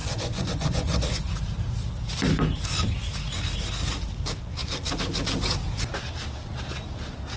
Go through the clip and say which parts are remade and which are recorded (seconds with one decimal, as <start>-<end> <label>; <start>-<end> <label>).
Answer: 0.0-1.3 remade; 1.3-7.4 recorded